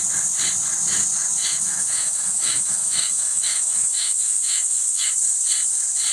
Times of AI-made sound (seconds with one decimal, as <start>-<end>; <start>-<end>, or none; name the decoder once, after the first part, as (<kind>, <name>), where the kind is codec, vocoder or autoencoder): 1.4-5.1 (autoencoder, DAC-VAE)